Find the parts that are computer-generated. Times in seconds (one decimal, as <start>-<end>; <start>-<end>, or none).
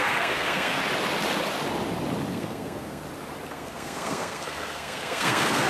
0.0-0.8; 2.3-3.0; 3.5-5.7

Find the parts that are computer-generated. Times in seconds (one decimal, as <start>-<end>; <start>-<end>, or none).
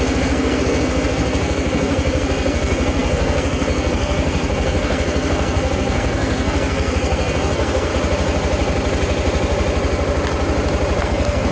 0.0-7.9; 11.0-11.5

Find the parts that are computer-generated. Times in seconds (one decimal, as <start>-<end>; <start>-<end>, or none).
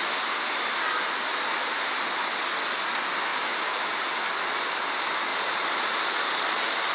1.3-2.2; 3.3-3.8; 5.3-6.9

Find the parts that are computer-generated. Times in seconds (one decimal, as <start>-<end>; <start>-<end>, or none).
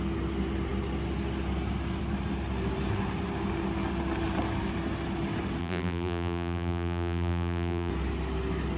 5.6-7.9